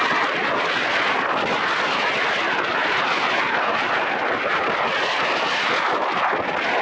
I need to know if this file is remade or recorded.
recorded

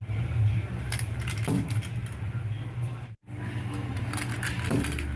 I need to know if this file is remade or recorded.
recorded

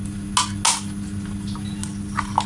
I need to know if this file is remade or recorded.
recorded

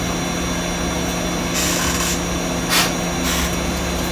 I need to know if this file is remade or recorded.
recorded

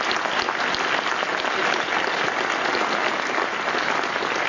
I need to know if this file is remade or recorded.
recorded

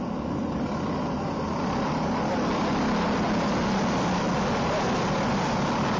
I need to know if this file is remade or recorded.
recorded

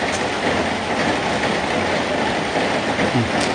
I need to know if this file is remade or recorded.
recorded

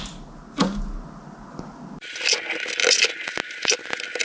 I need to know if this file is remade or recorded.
recorded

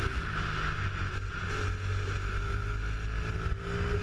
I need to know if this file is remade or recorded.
recorded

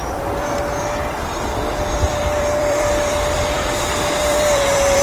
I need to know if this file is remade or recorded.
remade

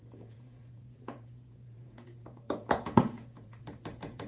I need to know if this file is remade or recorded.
remade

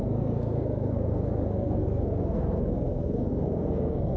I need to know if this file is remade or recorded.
remade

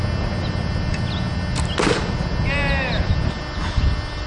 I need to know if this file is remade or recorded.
recorded